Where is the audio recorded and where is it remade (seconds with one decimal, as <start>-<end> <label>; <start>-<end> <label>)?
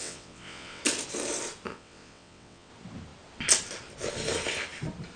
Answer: 0.0-0.8 remade; 0.8-1.7 recorded; 1.7-2.7 remade; 2.7-5.2 recorded